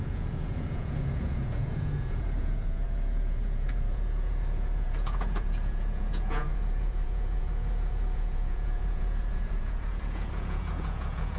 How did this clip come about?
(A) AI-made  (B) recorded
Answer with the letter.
A